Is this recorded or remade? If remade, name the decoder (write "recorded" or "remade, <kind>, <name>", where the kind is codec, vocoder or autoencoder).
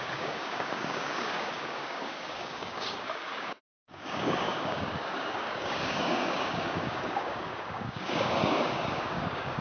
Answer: remade, codec, DAC